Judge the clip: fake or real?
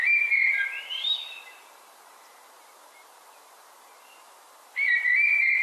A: fake